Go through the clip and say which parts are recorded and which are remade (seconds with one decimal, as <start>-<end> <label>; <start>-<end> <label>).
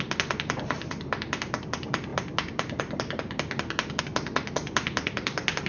0.0-5.7 recorded